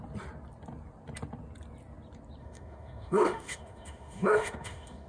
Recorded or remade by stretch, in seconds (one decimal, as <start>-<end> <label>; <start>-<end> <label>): 0.0-2.4 recorded; 2.4-5.1 remade